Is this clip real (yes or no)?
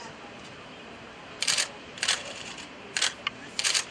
no